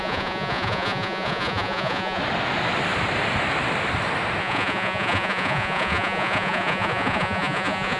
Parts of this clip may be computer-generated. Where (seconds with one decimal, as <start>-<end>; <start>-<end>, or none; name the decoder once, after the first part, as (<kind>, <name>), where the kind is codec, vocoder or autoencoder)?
0.0-2.2 (vocoder, Vocos); 4.4-8.0